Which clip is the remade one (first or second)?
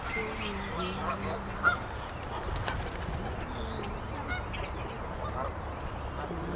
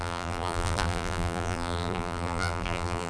second